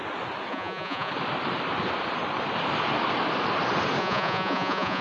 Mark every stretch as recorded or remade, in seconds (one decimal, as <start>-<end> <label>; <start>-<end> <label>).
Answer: 0.0-0.5 recorded; 0.5-1.1 remade; 1.1-4.0 recorded; 4.0-5.0 remade